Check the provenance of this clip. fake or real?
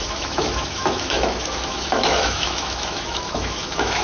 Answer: fake